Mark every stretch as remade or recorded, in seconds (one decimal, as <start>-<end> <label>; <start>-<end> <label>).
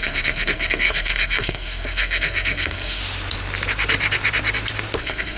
0.0-3.0 remade; 3.0-5.0 recorded; 5.0-5.4 remade